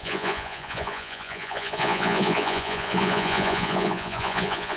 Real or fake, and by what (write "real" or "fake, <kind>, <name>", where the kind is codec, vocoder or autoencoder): fake, vocoder, Vocos